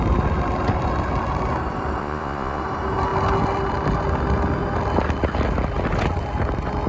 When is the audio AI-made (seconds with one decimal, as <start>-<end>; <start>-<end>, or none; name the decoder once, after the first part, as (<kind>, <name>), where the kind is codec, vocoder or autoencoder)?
2.0-2.6 (vocoder, Vocos)